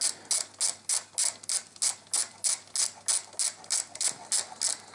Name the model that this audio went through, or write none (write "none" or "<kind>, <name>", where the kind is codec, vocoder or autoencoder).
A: none